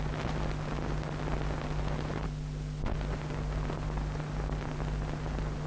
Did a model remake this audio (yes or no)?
no